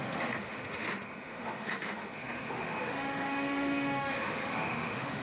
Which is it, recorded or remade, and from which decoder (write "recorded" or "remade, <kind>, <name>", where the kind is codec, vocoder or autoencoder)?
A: remade, autoencoder, DAC-VAE